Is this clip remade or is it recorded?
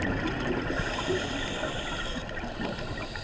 recorded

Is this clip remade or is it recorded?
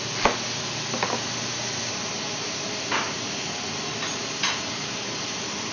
recorded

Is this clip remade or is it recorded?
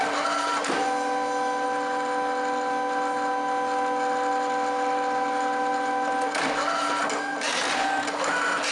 recorded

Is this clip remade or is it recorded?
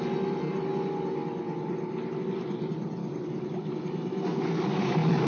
recorded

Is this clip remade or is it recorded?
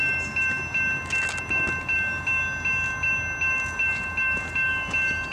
recorded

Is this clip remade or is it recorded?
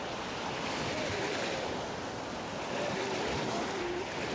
remade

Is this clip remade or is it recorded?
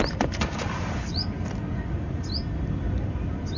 recorded